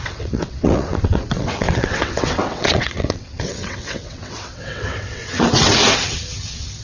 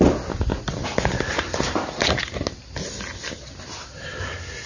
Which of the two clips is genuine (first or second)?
second